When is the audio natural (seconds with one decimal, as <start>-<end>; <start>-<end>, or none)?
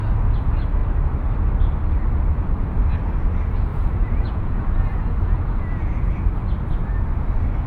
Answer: 0.0-3.7; 6.1-7.7